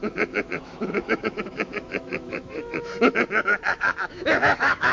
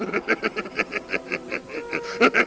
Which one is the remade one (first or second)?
first